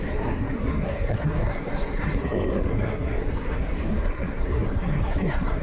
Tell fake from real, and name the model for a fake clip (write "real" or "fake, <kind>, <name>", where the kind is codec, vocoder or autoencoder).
fake, codec, SNAC